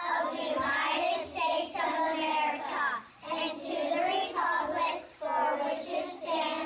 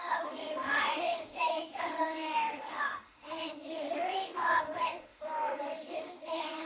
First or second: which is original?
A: first